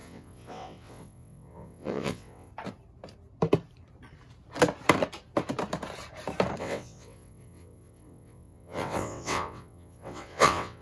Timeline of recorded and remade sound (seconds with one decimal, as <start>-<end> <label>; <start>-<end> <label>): 0.0-2.5 remade; 2.5-6.6 recorded; 6.6-10.8 remade